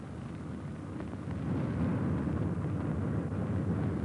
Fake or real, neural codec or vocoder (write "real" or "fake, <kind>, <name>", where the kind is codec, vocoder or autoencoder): real